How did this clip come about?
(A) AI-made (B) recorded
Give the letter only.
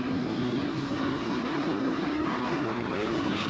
A